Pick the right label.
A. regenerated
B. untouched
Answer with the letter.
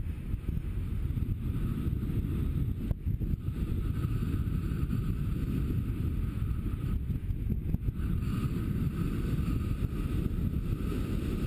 B